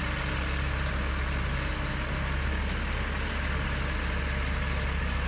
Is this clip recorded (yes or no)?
yes